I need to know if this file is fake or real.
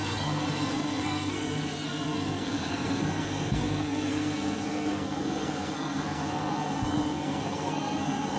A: fake